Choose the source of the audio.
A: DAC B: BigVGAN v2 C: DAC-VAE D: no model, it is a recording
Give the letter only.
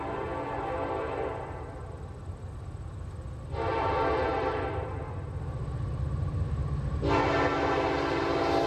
D